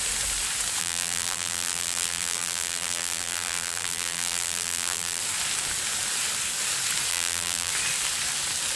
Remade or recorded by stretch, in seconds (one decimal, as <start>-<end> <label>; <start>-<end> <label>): 0.0-0.8 recorded; 0.8-5.2 remade; 5.2-7.1 recorded; 7.1-7.7 remade; 7.7-8.8 recorded